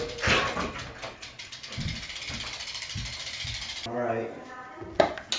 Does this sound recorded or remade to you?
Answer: recorded